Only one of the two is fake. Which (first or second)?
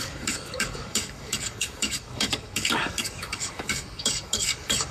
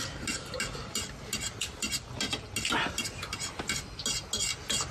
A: first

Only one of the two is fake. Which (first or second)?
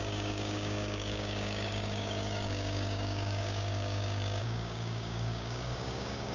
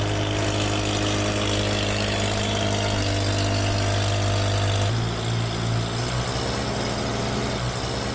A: first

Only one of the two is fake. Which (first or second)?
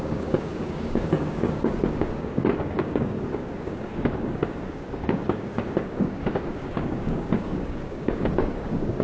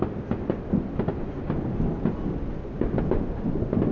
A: first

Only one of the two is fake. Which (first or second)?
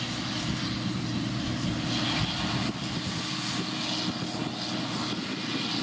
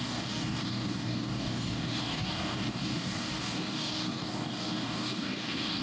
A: second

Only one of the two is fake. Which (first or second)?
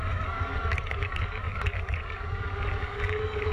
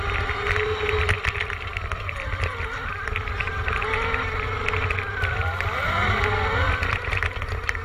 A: first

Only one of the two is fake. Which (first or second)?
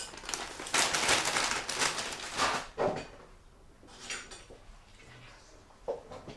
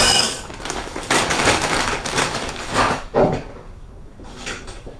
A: second